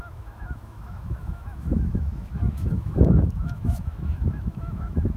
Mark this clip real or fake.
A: fake